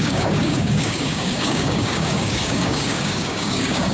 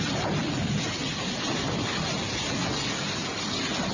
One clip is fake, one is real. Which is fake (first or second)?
first